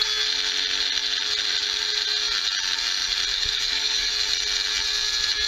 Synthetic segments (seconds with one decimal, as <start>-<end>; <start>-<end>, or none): 3.3-4.1